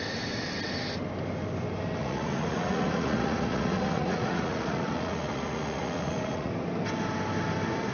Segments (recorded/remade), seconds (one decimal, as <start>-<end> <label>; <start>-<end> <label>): 0.0-2.0 recorded; 2.0-6.5 remade; 6.5-7.9 recorded